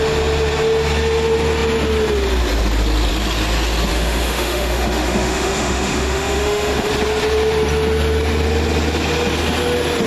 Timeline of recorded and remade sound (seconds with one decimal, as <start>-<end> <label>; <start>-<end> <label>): 0.0-3.9 recorded; 3.9-6.9 remade; 6.9-10.1 recorded